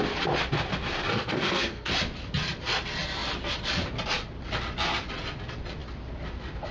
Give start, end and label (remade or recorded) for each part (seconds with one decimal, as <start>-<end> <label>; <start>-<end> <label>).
0.0-1.1 recorded; 1.1-1.9 remade; 1.9-6.7 recorded